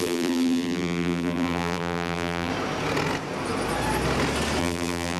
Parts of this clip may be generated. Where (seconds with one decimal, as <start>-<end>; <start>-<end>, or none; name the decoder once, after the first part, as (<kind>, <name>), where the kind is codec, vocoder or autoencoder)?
0.0-2.5 (vocoder, BigVGAN v2); 4.6-5.2